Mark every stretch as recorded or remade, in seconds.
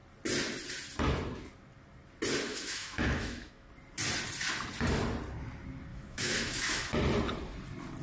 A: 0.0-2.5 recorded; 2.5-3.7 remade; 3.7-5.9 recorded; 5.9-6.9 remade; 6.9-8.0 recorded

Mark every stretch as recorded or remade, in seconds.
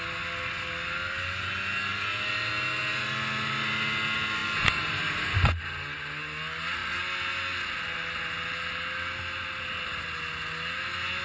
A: 0.0-11.2 recorded